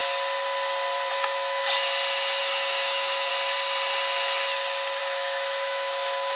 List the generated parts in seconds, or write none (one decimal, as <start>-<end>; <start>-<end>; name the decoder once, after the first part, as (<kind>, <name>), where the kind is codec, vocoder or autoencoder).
1.1-1.6 (autoencoder, DAC-VAE); 2.4-3.3; 5.0-6.4